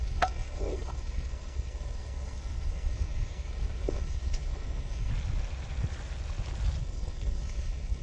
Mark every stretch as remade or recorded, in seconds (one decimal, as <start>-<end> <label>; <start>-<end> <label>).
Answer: 0.0-5.1 remade; 5.1-6.8 recorded; 6.8-8.0 remade